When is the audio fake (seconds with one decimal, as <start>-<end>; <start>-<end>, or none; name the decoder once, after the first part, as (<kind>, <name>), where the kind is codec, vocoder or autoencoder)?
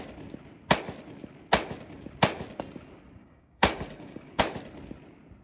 3.2-4.4 (codec, DAC)